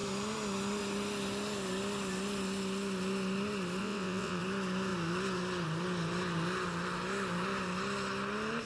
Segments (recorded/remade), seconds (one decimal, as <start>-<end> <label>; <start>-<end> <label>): 0.0-3.8 recorded; 3.8-4.4 remade; 4.4-8.7 recorded